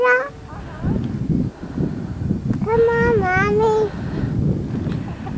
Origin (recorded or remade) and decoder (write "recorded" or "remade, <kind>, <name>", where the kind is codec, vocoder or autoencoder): recorded